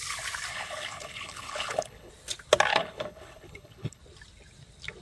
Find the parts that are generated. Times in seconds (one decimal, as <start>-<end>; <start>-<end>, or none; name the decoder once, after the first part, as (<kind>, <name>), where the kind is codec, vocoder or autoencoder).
0.5-2.1 (codec, HILCodec); 2.7-4.0